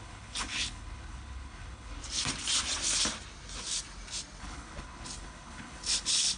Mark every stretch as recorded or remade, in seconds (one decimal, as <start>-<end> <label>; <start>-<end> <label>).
0.0-2.0 remade; 2.0-4.4 recorded; 4.4-6.4 remade